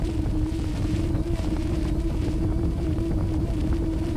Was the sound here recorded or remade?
remade